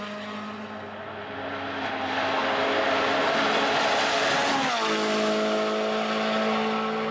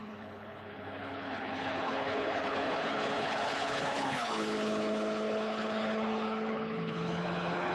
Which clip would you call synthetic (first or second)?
second